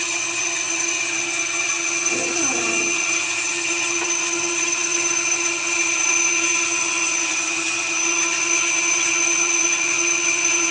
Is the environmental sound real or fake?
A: fake